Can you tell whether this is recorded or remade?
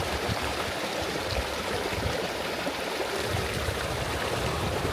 remade